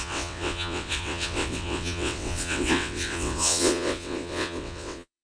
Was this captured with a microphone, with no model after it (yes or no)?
no